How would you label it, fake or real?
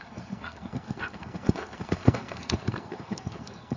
fake